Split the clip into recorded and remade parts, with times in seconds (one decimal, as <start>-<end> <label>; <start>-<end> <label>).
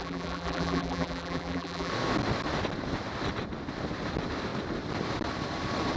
0.0-1.9 remade; 1.9-6.0 recorded